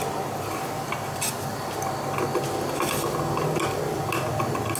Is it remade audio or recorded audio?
recorded